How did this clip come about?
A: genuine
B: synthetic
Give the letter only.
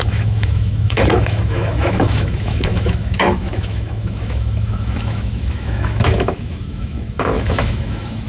B